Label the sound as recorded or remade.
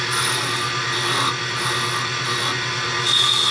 recorded